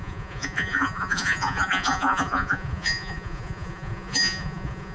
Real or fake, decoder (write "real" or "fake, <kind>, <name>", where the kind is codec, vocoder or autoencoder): fake, vocoder, Vocos